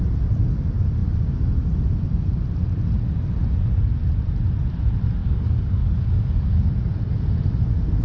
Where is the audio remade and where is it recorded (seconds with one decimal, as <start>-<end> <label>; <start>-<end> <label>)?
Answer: 0.0-5.2 recorded; 5.2-6.7 remade; 6.7-8.0 recorded